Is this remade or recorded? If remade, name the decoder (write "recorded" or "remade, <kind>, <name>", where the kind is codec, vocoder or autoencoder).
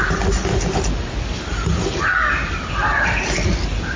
recorded